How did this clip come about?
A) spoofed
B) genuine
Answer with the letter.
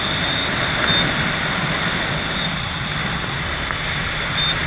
B